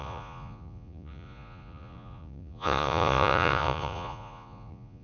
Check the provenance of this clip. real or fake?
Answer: fake